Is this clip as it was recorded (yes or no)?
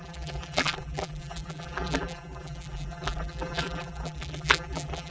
no